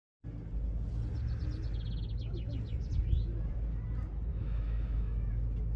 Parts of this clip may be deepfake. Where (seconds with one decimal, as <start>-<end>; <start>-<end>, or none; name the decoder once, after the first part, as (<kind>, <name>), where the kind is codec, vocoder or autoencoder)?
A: 4.3-5.3 (autoencoder, DAC-VAE)